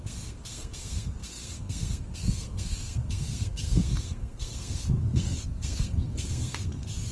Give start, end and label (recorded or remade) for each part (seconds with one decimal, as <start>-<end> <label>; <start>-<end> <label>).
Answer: 0.0-7.1 remade